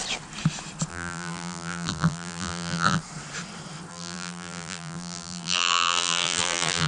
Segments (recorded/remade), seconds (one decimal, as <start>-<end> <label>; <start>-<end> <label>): 0.0-0.9 recorded; 0.9-3.0 remade; 3.0-3.9 recorded; 3.9-6.9 remade